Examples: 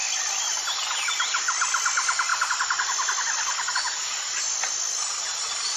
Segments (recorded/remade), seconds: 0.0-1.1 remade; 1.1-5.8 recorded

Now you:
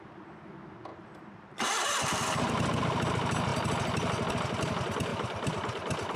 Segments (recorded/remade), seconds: 0.0-0.9 recorded; 0.9-2.5 remade; 2.5-5.1 recorded; 5.1-5.8 remade; 5.8-6.2 recorded

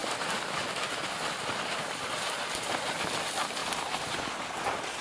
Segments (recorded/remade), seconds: 0.0-5.0 recorded

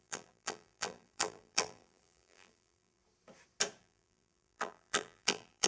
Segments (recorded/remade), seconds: 0.0-3.0 remade; 3.0-3.8 recorded; 3.8-5.7 remade

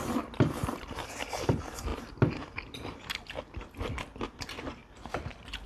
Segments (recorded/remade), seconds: 0.0-5.7 recorded